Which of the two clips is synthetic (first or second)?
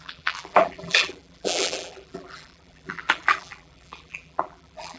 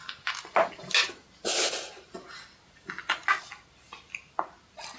first